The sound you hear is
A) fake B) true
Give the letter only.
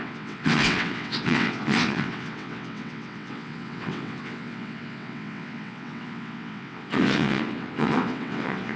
A